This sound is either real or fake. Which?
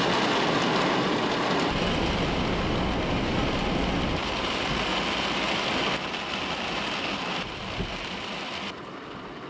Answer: real